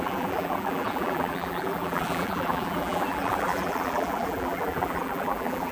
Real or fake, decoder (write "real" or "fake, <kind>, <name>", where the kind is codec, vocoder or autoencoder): fake, vocoder, BigVGAN v2